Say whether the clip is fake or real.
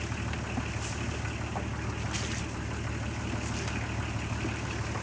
real